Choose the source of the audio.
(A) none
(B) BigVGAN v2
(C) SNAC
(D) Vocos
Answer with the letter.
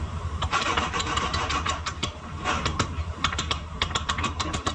B